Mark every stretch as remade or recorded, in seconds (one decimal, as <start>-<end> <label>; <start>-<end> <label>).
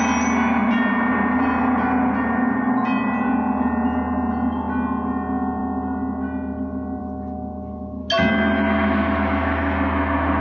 0.0-10.4 recorded